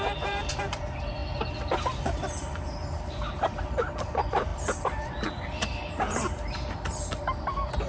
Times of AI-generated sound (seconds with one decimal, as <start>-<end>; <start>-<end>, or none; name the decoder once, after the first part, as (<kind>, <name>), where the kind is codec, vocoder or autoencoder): 0.0-1.2 (vocoder, BigVGAN v2); 2.0-7.9